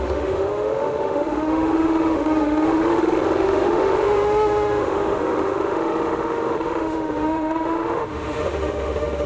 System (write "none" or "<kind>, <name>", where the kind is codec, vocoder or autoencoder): autoencoder, DAC-VAE